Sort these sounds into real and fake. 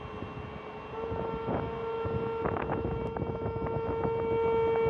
real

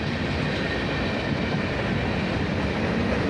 real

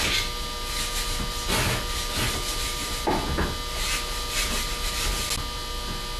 real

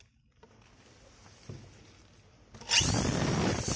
fake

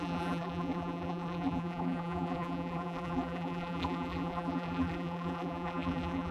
fake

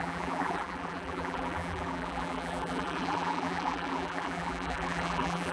fake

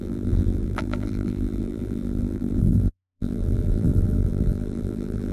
fake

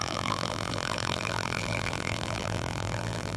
fake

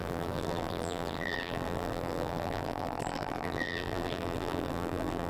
fake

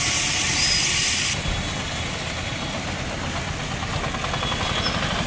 real